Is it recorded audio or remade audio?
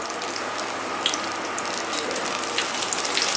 recorded